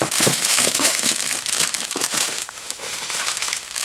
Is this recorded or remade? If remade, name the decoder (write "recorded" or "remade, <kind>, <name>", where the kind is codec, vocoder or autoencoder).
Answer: remade, autoencoder, DAC-VAE